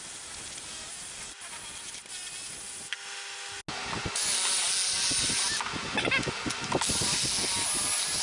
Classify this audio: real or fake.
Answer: real